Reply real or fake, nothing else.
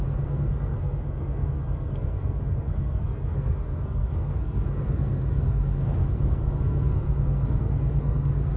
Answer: fake